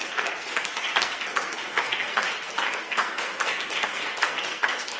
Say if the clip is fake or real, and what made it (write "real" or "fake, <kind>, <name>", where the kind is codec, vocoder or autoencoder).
fake, codec, SNAC